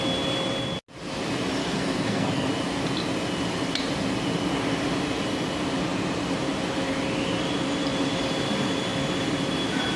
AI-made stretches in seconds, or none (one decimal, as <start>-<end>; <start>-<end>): 1.6-2.5